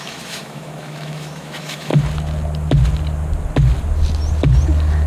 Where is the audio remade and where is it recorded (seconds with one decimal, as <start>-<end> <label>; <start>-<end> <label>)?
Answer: 0.0-1.9 remade; 1.9-5.1 recorded